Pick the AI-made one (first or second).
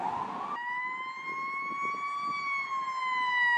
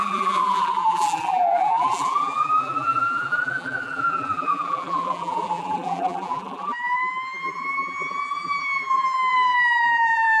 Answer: second